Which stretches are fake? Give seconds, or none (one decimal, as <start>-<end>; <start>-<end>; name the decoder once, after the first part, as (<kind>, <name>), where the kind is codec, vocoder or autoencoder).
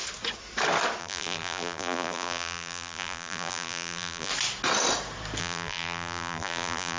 1.0-4.3 (vocoder, BigVGAN v2); 5.4-7.0